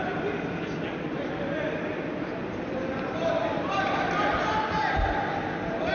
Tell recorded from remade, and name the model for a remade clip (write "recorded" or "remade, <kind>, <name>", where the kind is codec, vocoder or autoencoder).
remade, vocoder, BigVGAN v2